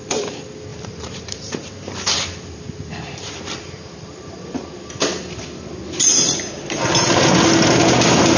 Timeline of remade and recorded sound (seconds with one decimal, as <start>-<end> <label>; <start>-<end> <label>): 0.0-0.7 recorded; 0.7-4.7 remade; 4.7-8.4 recorded